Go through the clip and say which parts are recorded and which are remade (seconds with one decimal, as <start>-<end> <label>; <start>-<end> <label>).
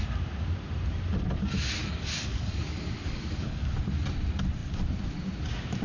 0.0-1.8 recorded; 1.8-3.7 remade; 3.7-5.8 recorded